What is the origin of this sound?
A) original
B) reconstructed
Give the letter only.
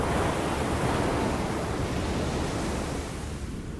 A